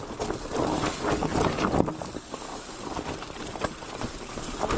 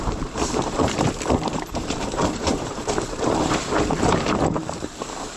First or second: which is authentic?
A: first